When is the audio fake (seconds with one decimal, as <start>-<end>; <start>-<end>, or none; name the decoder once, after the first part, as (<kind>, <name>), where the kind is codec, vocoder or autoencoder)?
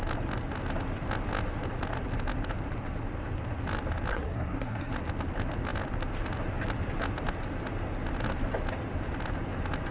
4.1-4.9 (codec, SNAC)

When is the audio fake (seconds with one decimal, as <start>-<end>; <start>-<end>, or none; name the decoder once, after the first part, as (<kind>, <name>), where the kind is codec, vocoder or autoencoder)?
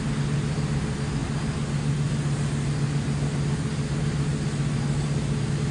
none